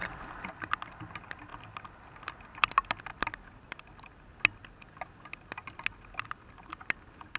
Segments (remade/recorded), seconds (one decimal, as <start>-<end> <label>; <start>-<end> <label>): 0.0-0.5 remade; 0.5-1.5 recorded; 1.5-2.7 remade; 2.7-3.1 recorded; 3.1-4.3 remade; 4.3-7.4 recorded

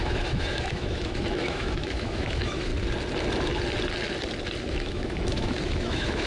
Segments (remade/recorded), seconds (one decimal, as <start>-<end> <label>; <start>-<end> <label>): 0.0-2.7 remade; 2.7-4.7 recorded; 4.7-6.3 remade

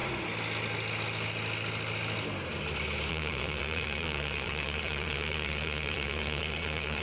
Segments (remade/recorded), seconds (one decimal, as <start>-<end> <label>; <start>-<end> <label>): 0.0-3.1 recorded; 3.1-7.0 remade

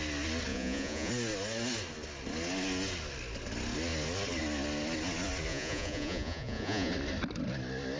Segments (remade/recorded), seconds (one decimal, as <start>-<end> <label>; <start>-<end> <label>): 0.0-0.5 recorded; 0.5-1.1 remade; 1.1-5.5 recorded; 5.5-6.9 remade; 6.9-8.0 recorded

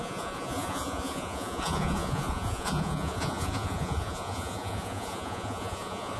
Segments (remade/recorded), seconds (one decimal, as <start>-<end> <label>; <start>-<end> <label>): 0.0-6.2 remade